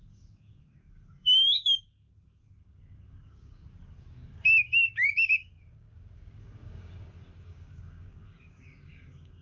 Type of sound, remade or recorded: remade